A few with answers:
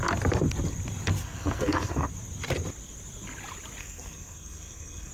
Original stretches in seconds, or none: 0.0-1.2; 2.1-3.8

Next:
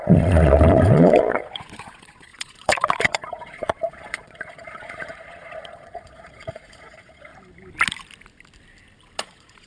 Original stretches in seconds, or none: 7.3-9.2

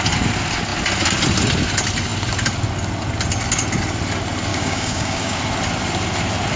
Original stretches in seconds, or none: 0.0-4.5; 5.4-6.6

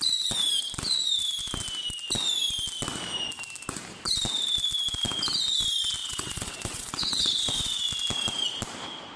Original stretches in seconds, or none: 0.0-6.0; 7.8-9.2